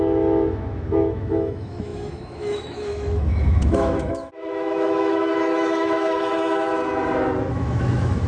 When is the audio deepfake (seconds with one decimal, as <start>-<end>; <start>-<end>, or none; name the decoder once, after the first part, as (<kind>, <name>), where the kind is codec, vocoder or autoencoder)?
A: 0.0-6.7 (autoencoder, DAC-VAE); 7.5-8.3